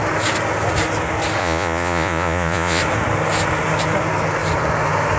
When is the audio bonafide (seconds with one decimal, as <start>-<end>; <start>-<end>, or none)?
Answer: 0.0-1.4; 2.8-5.2